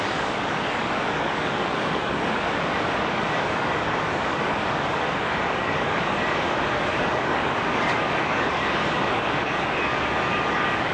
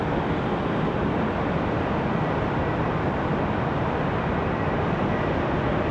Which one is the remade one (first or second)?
first